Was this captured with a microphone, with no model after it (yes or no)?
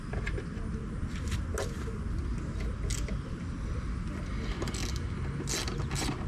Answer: yes